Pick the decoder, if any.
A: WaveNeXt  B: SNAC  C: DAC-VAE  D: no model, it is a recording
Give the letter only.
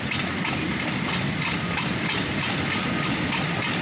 D